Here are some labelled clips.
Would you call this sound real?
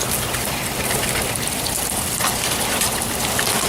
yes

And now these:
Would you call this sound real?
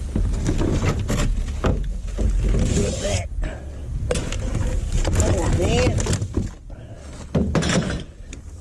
yes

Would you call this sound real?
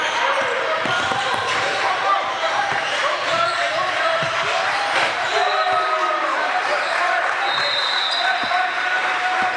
no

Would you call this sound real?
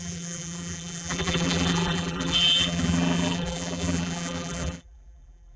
no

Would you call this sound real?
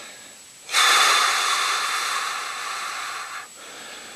no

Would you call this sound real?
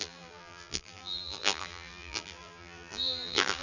no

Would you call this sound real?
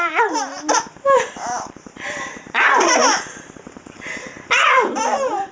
no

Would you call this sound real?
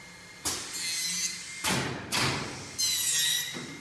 yes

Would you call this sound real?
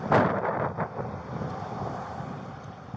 no